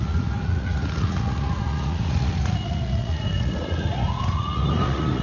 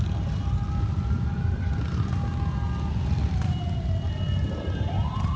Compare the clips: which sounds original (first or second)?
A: second